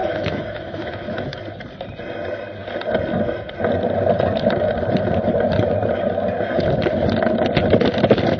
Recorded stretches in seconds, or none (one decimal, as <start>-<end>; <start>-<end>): 1.4-8.4